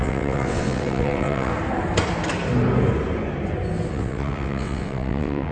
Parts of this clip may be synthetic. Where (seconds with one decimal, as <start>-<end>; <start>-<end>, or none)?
0.0-1.5; 3.9-5.5